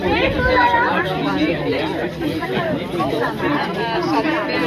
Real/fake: real